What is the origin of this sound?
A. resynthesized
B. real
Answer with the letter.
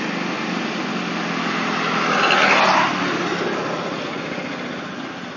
B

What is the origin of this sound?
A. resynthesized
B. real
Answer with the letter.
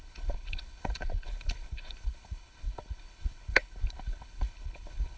A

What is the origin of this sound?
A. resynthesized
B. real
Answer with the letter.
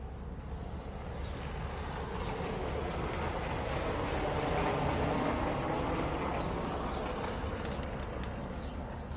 B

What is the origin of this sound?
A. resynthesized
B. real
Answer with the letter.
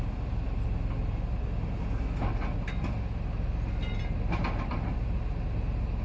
B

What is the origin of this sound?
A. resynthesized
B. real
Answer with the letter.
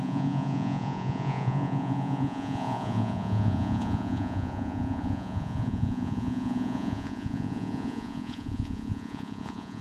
A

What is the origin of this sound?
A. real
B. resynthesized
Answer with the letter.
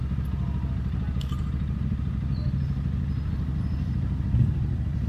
A